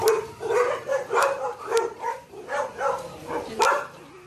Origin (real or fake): fake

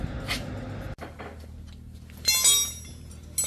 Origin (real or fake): real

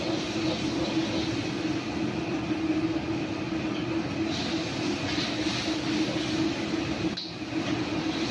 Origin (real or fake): real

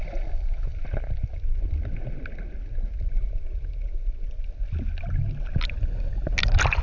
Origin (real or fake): real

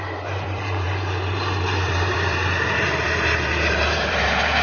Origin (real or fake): fake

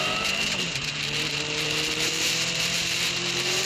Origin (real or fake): fake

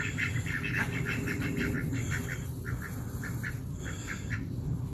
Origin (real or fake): real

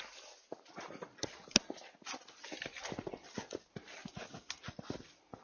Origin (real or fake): real